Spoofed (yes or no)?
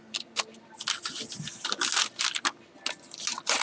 no